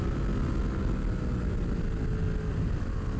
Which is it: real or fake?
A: real